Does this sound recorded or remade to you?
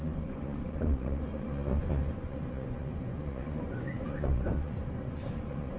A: remade